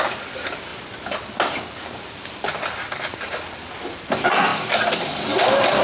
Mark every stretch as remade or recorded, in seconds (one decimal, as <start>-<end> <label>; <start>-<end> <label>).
0.0-0.7 remade; 0.7-2.1 recorded; 2.1-5.8 remade